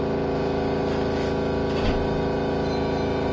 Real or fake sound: real